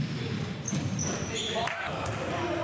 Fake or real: real